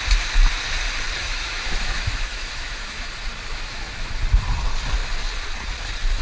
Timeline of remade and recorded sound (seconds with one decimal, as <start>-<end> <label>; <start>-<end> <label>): 0.0-1.2 recorded; 1.2-3.1 remade; 3.1-3.5 recorded; 3.5-4.2 remade; 4.2-6.2 recorded